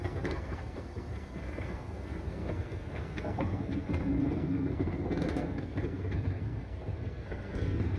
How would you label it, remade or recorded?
remade